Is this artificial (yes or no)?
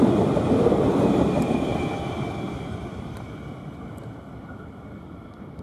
yes